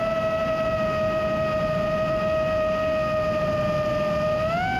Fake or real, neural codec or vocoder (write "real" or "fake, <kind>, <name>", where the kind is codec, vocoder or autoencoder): real